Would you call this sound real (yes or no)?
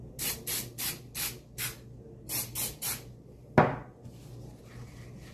yes